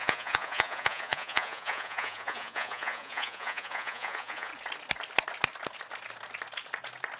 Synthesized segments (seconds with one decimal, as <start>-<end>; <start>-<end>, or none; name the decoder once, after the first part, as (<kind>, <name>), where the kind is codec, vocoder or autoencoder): 0.0-4.5 (vocoder, Vocos)